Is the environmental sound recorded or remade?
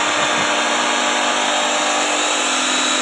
recorded